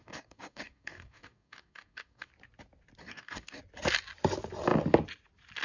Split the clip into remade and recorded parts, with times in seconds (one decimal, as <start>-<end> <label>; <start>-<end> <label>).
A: 0.0-2.3 remade; 2.3-3.0 recorded; 3.0-3.6 remade; 3.6-5.6 recorded